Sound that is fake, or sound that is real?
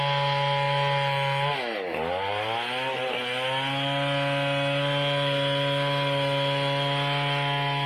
real